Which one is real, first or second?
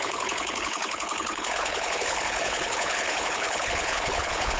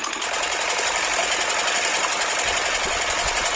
second